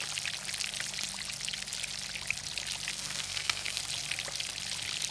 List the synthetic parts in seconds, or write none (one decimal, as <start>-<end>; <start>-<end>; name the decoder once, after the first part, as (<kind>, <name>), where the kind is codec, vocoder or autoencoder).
2.9-3.8 (codec, SNAC)